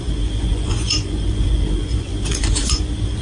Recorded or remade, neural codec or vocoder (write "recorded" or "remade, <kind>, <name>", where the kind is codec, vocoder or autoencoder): remade, vocoder, Vocos